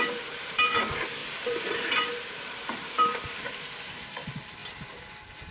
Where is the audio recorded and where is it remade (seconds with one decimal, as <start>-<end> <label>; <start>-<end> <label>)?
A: 0.0-4.6 remade; 4.6-5.5 recorded